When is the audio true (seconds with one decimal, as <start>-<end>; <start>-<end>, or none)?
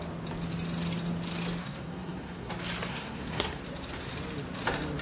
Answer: 0.0-1.6; 2.5-2.9; 3.6-5.0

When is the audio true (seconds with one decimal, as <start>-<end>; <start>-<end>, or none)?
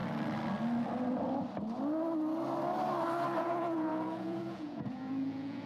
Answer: 0.0-3.4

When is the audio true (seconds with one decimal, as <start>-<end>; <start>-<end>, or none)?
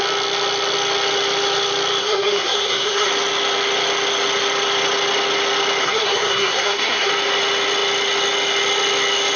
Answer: 0.0-2.0; 3.1-5.8; 7.1-9.4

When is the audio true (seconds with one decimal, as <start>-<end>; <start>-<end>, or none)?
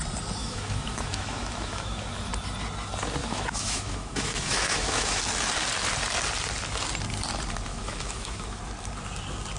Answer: 0.0-0.4; 2.3-3.2; 5.2-7.7; 8.6-9.6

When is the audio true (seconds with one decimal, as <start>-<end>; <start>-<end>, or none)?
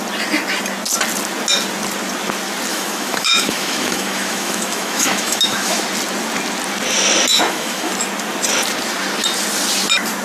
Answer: 0.0-2.7; 5.8-7.3; 7.9-10.2